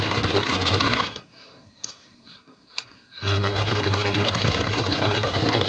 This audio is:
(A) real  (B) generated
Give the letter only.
B